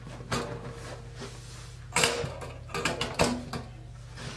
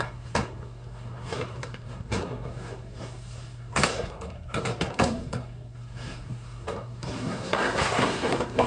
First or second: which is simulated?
second